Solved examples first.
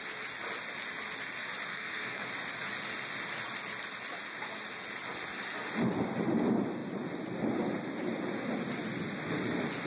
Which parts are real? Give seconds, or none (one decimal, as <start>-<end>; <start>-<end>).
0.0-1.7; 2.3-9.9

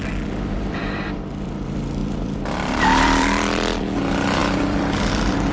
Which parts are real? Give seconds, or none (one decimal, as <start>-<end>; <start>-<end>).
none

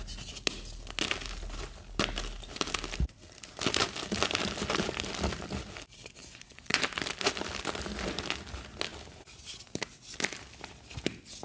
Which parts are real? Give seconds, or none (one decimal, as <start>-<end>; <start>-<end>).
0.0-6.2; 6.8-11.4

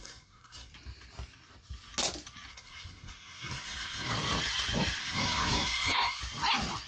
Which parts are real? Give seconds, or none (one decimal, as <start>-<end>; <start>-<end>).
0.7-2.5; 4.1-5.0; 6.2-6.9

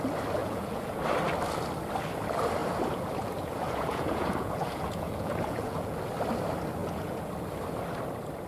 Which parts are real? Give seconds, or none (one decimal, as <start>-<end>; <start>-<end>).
0.0-0.4; 1.0-2.6; 6.1-6.8; 7.3-8.5

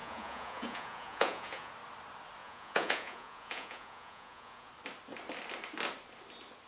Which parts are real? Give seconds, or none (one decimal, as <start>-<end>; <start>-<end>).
1.7-2.4; 4.7-6.7